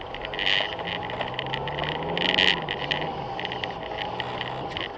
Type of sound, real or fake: real